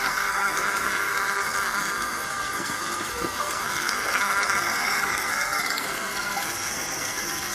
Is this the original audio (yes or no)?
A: no